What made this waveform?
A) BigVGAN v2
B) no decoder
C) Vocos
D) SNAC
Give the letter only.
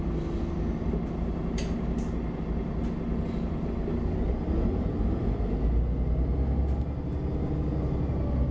B